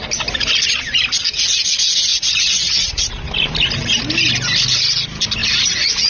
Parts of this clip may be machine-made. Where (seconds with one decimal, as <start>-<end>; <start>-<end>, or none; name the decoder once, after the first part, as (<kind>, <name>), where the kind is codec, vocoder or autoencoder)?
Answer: 2.1-3.0 (vocoder, Vocos); 5.4-6.1